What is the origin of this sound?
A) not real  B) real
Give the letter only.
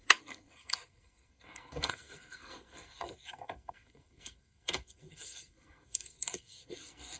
A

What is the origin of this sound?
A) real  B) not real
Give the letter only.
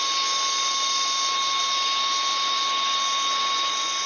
A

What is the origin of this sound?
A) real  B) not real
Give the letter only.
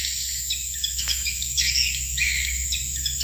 B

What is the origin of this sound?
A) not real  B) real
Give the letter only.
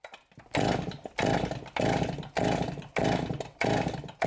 B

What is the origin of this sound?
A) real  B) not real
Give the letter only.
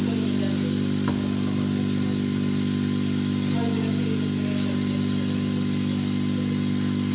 A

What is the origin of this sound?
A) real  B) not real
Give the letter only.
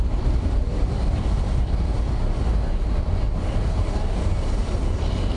A